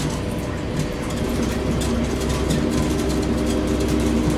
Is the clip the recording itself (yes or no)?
yes